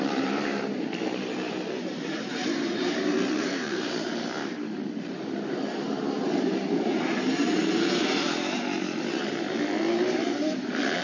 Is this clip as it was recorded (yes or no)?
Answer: no